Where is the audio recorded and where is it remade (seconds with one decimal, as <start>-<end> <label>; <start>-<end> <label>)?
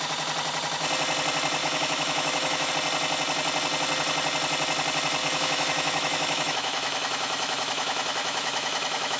0.0-1.6 recorded; 1.6-2.7 remade; 2.7-5.2 recorded; 5.2-9.2 remade